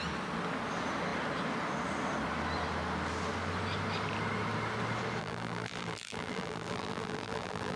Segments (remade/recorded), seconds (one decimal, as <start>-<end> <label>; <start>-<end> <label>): 0.0-5.2 recorded; 5.2-7.8 remade